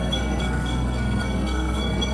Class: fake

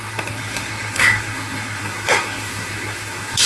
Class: fake